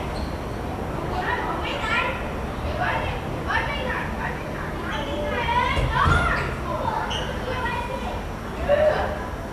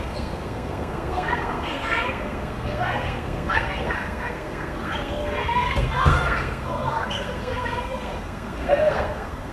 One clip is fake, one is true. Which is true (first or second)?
first